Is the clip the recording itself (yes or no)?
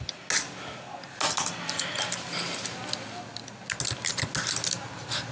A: yes